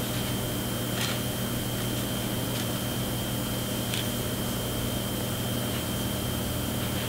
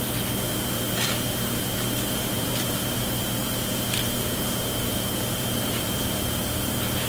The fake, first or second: second